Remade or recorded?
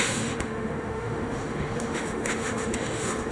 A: remade